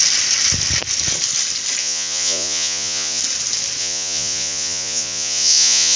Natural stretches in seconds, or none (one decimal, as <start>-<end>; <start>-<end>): 0.0-1.8; 3.2-3.8